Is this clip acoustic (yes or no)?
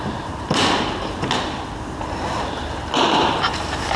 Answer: yes